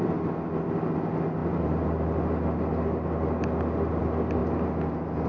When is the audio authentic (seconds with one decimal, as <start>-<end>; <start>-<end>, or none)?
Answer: 0.0-5.3